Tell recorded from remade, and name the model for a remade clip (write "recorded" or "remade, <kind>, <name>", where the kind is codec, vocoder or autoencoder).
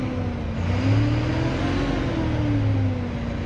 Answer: recorded